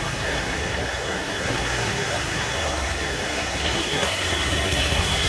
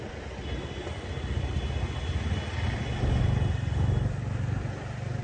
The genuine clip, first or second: second